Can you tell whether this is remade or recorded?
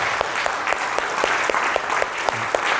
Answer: recorded